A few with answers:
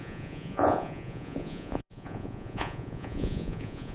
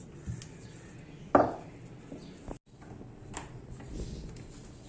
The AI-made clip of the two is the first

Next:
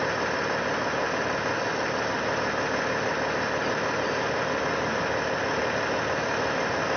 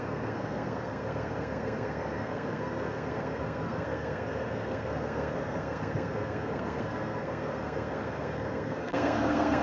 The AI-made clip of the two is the second